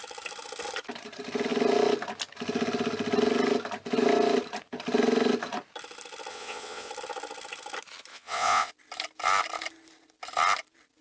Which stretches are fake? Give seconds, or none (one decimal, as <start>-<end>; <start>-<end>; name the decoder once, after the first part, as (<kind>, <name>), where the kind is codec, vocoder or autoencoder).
6.3-6.9 (vocoder, WaveNeXt); 8.1-8.7